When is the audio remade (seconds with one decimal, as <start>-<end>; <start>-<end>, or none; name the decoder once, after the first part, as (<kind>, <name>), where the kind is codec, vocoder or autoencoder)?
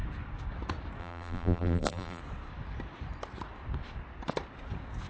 1.0-2.2 (vocoder, BigVGAN v2)